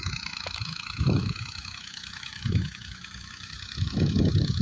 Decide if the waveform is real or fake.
fake